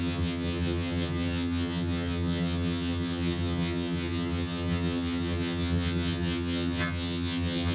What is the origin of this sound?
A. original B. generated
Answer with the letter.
B